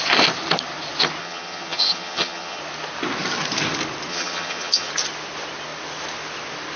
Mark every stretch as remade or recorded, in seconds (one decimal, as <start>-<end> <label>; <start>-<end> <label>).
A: 0.0-1.2 recorded; 1.2-2.6 remade; 2.6-4.1 recorded; 4.1-4.9 remade; 4.9-6.8 recorded